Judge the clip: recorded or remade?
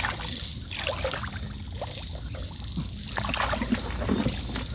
recorded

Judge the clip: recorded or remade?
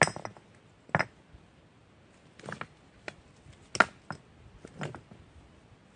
recorded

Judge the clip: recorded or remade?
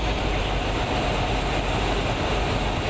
recorded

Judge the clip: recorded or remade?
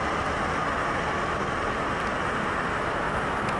recorded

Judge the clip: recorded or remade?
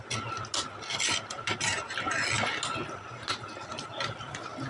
recorded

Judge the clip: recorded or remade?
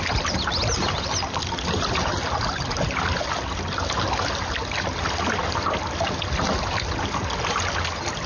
recorded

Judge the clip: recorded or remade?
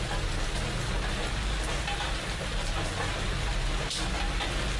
recorded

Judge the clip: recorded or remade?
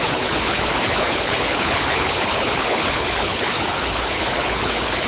remade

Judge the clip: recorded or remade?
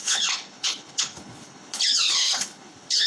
remade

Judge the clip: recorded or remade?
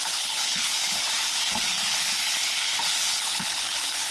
remade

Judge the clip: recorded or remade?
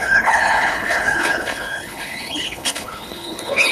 remade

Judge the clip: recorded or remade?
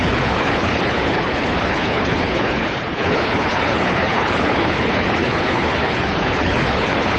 remade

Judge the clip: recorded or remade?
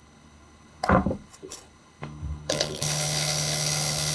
remade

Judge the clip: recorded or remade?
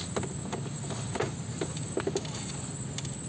recorded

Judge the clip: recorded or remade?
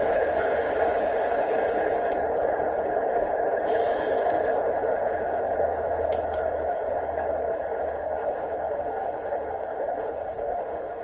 remade